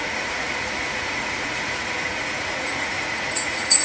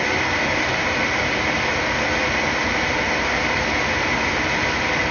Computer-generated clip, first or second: first